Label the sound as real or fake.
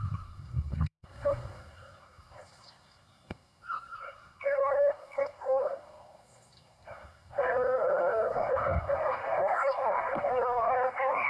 fake